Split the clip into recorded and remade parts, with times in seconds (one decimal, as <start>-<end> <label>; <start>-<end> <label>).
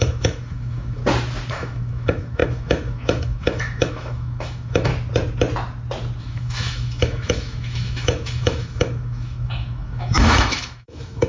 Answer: 0.0-1.0 remade; 1.0-1.5 recorded; 1.5-4.9 remade; 4.9-6.2 recorded; 6.2-11.3 remade